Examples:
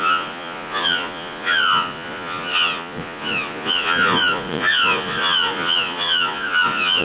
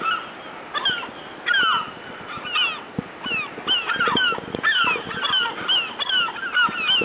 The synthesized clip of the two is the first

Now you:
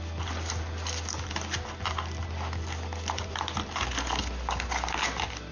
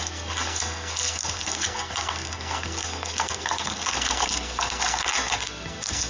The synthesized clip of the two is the second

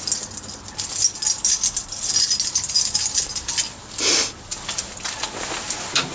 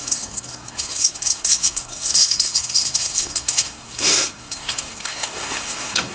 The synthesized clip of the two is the second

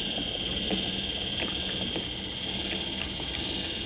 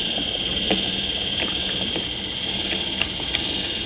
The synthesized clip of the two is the second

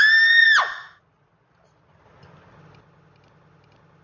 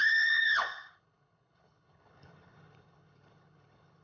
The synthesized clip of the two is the second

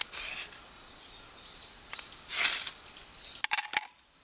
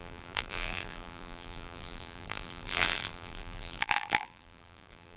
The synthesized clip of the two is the second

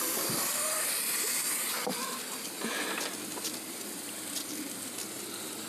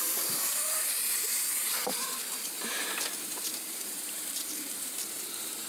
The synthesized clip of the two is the second